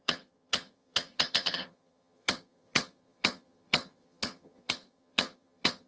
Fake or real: fake